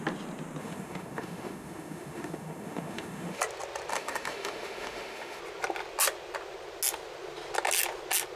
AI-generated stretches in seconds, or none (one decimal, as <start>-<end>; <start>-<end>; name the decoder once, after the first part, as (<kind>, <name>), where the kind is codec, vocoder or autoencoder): 0.6-3.4 (autoencoder, DAC-VAE); 3.9-5.4